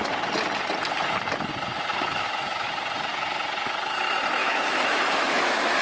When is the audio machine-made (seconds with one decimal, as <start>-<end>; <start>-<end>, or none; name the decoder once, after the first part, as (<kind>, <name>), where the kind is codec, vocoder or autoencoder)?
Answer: 1.9-2.7 (autoencoder, DAC-VAE); 4.4-5.8